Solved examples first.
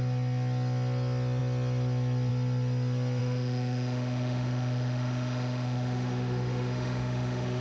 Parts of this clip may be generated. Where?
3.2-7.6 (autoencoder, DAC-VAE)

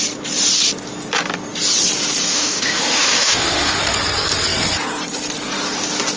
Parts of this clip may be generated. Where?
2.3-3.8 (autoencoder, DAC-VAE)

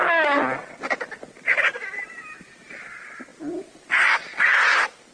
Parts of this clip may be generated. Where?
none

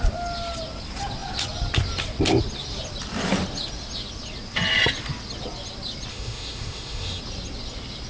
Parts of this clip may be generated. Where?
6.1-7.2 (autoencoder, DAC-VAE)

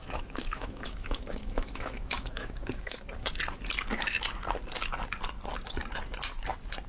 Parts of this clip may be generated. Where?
0.0-3.0 (autoencoder, DAC-VAE)

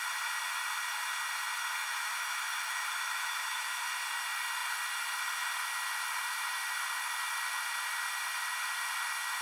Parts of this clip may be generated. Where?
1.8-3.8 (autoencoder, DAC-VAE)